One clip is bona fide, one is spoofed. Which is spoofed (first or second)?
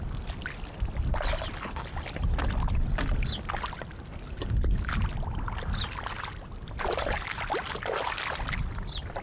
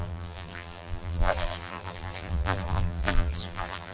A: second